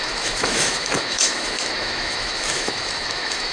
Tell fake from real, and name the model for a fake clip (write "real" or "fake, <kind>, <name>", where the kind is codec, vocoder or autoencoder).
fake, autoencoder, DAC-VAE